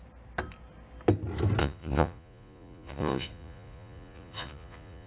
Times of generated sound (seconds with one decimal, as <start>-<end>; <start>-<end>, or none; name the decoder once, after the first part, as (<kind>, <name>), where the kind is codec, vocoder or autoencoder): 1.6-5.1 (vocoder, Vocos)

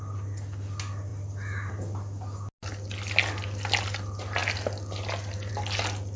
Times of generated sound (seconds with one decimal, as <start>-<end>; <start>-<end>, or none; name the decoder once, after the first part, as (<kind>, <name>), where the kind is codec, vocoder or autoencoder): none

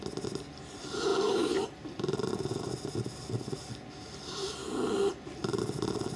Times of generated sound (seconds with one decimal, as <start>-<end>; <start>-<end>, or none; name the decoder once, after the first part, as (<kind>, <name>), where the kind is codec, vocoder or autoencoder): 1.1-2.7 (vocoder, BigVGAN v2)

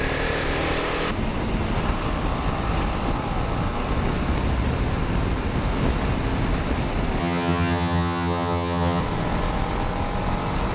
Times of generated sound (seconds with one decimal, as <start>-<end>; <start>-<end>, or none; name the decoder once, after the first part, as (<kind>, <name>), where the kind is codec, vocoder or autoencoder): 7.2-9.0 (vocoder, HiFi-GAN)

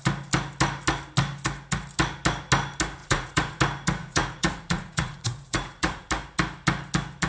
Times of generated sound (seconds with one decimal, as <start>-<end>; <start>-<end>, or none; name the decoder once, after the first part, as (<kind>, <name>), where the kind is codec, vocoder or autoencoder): 3.0-3.6 (vocoder, Vocos); 4.0-6.1

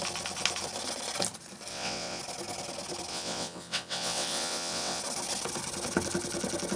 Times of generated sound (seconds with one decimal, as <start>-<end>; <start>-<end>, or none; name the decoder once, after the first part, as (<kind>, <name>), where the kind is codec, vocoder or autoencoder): 1.7-2.2 (vocoder, WaveNeXt); 3.1-5.0